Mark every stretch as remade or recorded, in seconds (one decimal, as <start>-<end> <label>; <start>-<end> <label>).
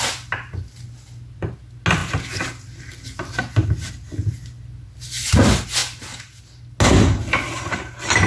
0.0-8.3 recorded